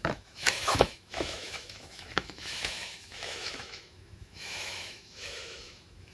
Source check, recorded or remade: remade